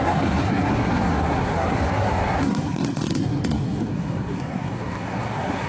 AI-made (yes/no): yes